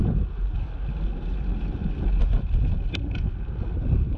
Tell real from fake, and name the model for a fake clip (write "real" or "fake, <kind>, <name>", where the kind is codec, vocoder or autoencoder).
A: real